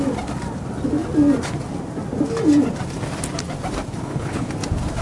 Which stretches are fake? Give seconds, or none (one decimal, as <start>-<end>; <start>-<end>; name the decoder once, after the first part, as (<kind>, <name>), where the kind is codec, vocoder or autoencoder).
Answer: 3.9-4.5 (codec, HILCodec)